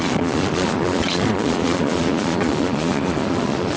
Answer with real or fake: fake